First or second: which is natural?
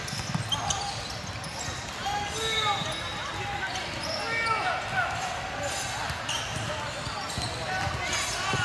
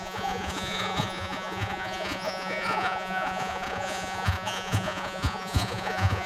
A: first